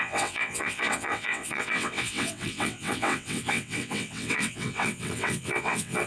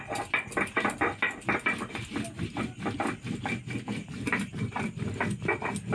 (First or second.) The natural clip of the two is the second